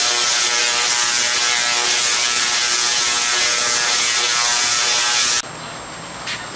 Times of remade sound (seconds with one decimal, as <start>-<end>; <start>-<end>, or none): none